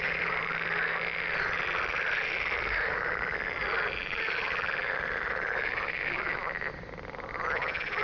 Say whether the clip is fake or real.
real